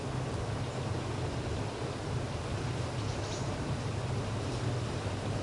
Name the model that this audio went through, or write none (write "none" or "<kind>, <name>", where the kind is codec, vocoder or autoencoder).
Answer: none